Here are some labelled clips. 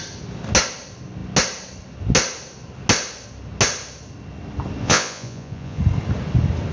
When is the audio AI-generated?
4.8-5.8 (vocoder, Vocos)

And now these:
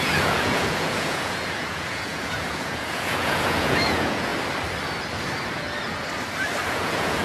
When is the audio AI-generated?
0.0-4.3 (vocoder, Vocos); 6.7-7.2